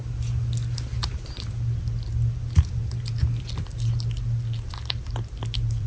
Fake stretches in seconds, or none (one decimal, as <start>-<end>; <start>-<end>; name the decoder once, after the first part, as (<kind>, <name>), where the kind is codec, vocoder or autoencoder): 5.0-5.9 (vocoder, BigVGAN v2)